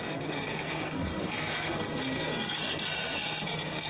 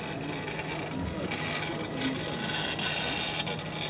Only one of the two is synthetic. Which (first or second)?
first